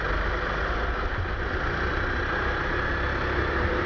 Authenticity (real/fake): real